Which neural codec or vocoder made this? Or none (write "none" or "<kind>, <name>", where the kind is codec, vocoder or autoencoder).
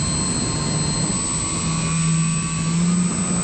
none